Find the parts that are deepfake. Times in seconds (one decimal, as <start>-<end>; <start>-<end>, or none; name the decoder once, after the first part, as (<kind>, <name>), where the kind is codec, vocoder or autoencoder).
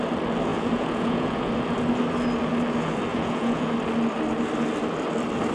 0.5-1.5 (vocoder, Vocos); 3.1-3.7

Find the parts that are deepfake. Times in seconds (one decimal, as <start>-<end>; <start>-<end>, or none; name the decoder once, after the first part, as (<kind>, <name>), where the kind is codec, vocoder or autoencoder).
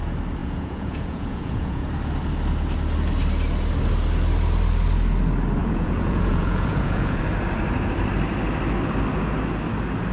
0.4-1.9 (vocoder, Vocos); 5.6-7.2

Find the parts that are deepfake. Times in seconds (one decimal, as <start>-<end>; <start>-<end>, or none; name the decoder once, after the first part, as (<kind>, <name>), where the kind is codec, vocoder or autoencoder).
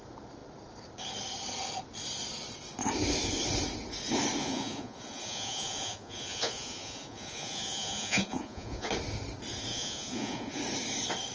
4.4-8.9 (vocoder, Vocos); 9.7-10.6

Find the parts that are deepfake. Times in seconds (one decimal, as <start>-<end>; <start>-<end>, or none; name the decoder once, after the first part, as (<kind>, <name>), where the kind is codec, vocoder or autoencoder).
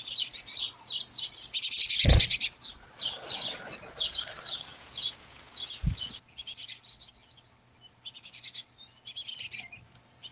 4.7-6.7 (vocoder, Vocos)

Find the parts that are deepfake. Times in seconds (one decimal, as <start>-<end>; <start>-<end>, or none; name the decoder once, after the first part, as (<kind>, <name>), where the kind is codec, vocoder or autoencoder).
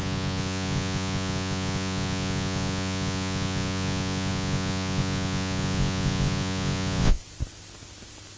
0.0-7.2 (vocoder, Vocos)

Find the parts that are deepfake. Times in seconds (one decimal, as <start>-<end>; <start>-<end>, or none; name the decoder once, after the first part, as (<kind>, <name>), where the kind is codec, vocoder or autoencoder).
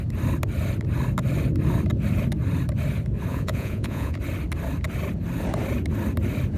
3.3-4.2 (vocoder, Vocos)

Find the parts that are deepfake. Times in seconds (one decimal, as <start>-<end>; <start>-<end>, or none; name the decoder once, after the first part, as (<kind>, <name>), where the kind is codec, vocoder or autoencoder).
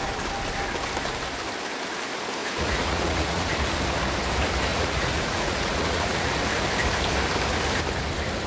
2.4-3.5 (vocoder, Vocos); 4.7-6.4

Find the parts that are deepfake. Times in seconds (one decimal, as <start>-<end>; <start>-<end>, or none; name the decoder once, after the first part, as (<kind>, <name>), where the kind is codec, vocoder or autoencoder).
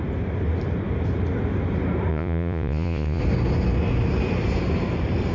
2.1-3.2 (vocoder, Vocos)